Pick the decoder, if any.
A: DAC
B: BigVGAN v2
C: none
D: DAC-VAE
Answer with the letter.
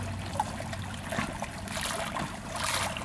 C